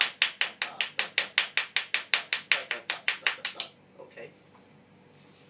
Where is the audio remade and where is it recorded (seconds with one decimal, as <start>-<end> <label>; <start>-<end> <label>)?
0.0-2.6 recorded; 2.6-3.4 remade; 3.4-5.5 recorded